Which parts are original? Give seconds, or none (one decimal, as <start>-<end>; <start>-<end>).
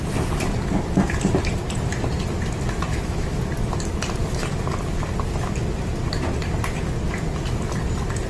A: 0.0-2.9; 3.4-8.3